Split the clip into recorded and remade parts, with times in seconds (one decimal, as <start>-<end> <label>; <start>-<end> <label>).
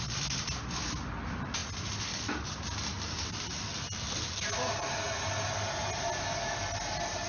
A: 0.0-7.3 recorded